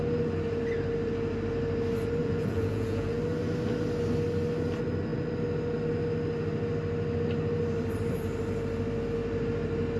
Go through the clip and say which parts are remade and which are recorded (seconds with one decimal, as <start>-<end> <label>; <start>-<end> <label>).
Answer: 0.0-2.2 recorded; 2.2-3.2 remade; 3.2-10.0 recorded